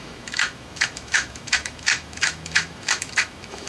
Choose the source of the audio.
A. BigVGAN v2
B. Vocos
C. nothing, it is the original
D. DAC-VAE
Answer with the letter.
D